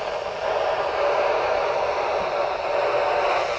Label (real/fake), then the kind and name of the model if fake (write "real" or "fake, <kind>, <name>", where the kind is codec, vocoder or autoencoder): real